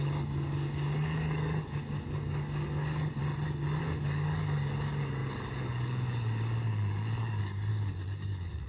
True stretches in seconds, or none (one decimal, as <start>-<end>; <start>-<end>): 3.2-3.8